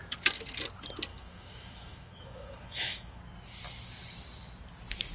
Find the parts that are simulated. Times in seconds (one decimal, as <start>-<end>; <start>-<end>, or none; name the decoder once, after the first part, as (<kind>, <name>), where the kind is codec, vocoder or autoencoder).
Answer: 1.1-3.2 (autoencoder, DAC-VAE)